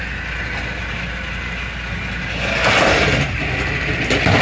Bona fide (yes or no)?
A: yes